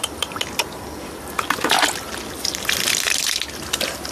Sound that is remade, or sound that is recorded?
recorded